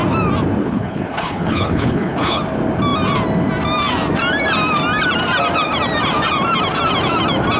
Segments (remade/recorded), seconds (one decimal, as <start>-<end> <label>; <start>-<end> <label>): 0.0-0.6 recorded; 0.6-2.4 remade; 2.4-7.6 recorded